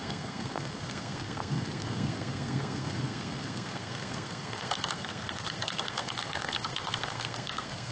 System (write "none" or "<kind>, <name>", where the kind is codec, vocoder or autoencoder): codec, SNAC